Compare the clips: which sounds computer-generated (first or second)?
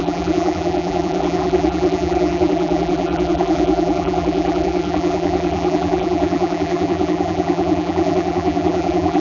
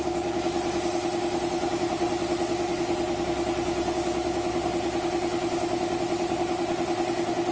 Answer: first